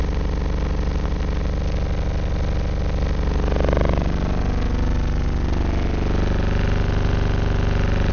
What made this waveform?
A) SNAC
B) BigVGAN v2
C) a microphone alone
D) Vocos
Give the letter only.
C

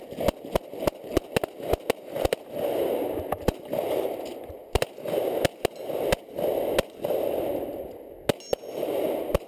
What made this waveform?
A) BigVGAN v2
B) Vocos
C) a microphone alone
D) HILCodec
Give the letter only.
C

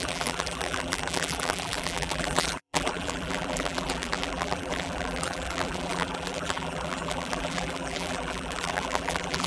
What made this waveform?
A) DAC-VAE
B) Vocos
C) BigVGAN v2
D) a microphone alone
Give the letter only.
C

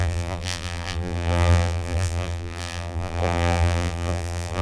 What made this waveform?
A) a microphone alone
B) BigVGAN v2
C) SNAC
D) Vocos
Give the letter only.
B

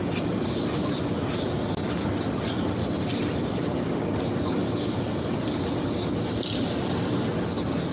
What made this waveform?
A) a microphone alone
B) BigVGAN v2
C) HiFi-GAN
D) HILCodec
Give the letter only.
A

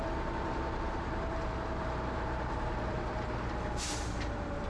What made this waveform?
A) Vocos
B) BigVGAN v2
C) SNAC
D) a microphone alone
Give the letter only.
B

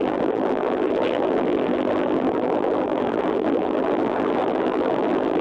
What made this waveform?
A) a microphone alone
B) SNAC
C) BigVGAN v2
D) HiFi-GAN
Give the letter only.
C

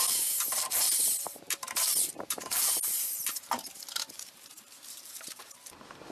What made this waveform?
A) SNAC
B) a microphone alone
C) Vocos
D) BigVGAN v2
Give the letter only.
D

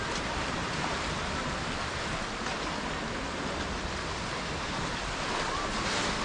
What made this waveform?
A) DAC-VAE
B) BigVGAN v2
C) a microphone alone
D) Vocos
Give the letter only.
C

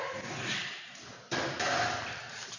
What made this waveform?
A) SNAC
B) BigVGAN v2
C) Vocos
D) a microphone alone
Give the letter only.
B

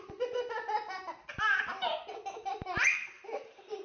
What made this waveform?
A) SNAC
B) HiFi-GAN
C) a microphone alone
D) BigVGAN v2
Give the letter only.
C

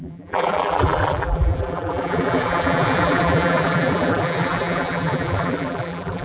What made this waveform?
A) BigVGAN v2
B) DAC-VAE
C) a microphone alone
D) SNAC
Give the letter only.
A